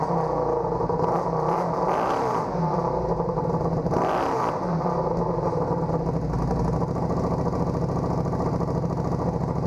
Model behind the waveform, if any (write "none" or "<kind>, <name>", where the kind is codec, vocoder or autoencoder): none